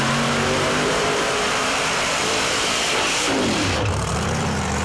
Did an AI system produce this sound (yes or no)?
yes